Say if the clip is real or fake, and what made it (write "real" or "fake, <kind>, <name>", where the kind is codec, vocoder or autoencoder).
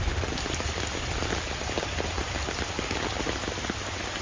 real